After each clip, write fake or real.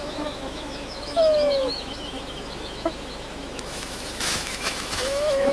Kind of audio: fake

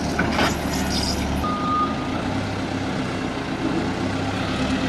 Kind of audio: real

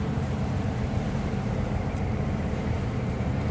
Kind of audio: fake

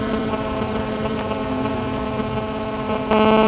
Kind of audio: fake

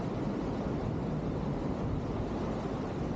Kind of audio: real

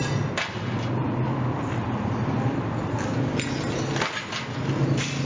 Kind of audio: real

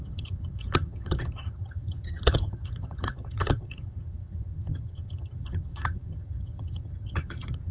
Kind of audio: fake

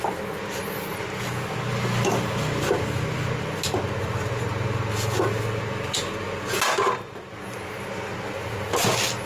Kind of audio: real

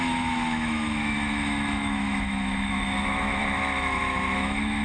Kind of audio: fake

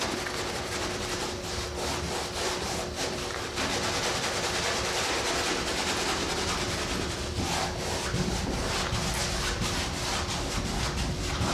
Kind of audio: real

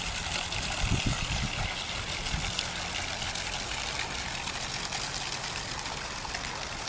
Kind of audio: real